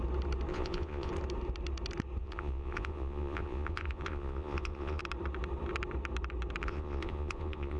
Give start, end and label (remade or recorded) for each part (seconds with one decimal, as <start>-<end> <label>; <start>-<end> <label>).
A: 0.0-0.5 recorded; 0.5-1.1 remade; 1.1-2.2 recorded; 2.2-5.0 remade; 5.0-6.6 recorded; 6.6-7.8 remade